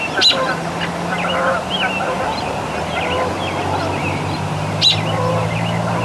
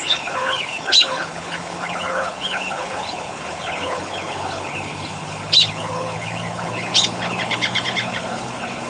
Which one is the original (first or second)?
first